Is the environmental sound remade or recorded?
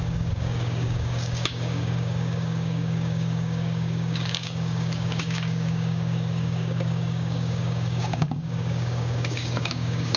remade